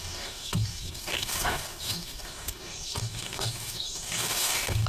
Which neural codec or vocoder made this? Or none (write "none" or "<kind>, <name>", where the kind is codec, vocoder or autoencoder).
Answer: codec, DAC